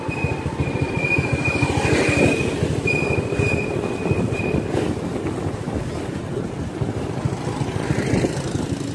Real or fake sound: real